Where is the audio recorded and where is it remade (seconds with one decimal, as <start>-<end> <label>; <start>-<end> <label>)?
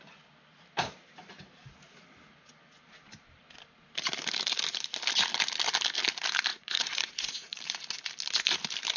0.0-6.5 recorded; 6.5-7.6 remade; 7.6-9.0 recorded